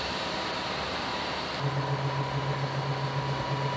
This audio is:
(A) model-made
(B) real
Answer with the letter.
B